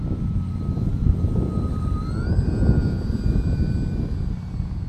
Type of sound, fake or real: real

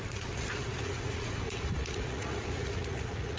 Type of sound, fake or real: fake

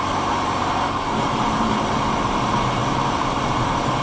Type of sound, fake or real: fake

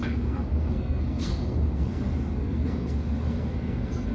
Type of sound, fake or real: fake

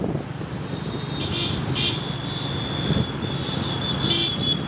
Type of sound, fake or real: real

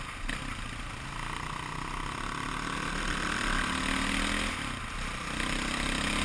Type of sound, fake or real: real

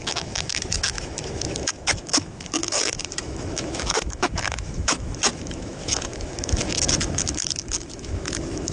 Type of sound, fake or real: fake